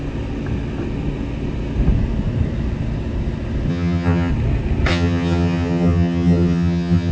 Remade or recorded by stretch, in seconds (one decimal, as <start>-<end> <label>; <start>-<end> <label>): 0.0-3.7 recorded; 3.7-4.3 remade; 4.3-4.9 recorded; 4.9-7.1 remade